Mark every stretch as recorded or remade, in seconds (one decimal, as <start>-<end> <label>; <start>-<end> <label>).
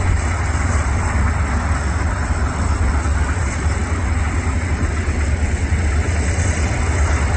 0.0-7.4 recorded